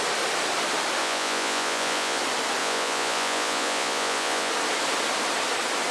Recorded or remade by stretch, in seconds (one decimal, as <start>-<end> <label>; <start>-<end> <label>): 0.0-1.0 recorded; 1.0-2.2 remade; 2.2-2.6 recorded; 2.6-4.5 remade; 4.5-5.9 recorded

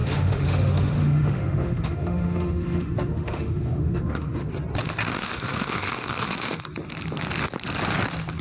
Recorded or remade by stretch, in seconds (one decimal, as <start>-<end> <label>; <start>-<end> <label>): 0.0-4.5 remade; 4.5-5.0 recorded; 5.0-6.6 remade; 6.6-8.4 recorded

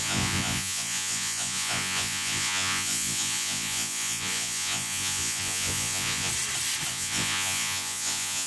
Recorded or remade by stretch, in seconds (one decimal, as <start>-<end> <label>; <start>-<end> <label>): 0.0-6.3 remade; 6.3-6.9 recorded; 6.9-8.5 remade

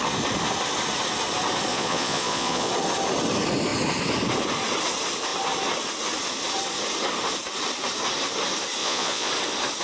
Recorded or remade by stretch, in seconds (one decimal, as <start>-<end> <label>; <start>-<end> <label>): 0.0-1.7 recorded; 1.7-2.7 remade; 2.7-8.8 recorded; 8.8-9.3 remade; 9.3-9.8 recorded

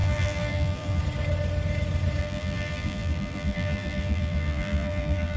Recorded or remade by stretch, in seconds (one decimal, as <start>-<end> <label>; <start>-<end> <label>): 0.0-1.0 remade; 1.0-2.2 recorded; 2.2-5.4 remade